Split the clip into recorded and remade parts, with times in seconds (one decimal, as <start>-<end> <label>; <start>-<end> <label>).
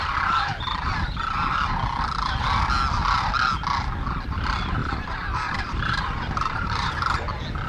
0.0-4.8 recorded; 4.8-6.9 remade; 6.9-7.7 recorded